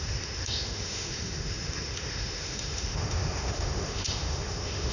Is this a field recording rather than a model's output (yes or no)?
no